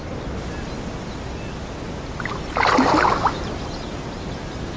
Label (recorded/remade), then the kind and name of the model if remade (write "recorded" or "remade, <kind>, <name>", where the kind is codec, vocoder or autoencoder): recorded